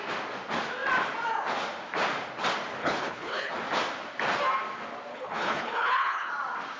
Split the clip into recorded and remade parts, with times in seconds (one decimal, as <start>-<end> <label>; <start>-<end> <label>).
0.0-2.8 recorded; 2.8-3.5 remade; 3.5-5.1 recorded; 5.1-6.3 remade; 6.3-6.8 recorded